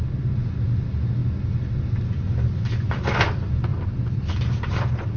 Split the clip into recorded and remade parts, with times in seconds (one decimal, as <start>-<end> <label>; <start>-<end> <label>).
0.0-5.2 recorded